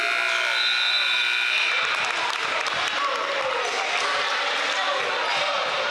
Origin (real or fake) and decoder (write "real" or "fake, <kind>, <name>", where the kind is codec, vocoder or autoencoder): real